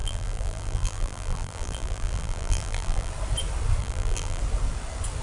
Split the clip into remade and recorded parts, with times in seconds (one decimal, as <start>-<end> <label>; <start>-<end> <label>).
0.0-3.1 remade; 3.1-3.8 recorded; 3.8-4.4 remade; 4.4-5.2 recorded